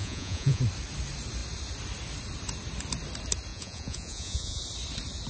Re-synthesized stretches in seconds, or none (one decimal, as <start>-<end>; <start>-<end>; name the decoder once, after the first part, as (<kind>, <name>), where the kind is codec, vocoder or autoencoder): 0.0-0.6 (vocoder, Vocos); 3.5-4.6